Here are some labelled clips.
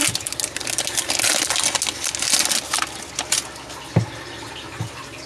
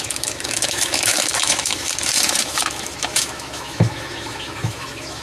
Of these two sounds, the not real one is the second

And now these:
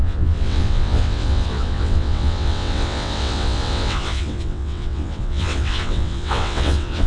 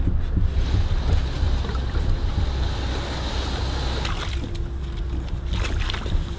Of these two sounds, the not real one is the first